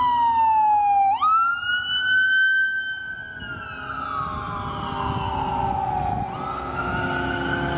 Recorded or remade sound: recorded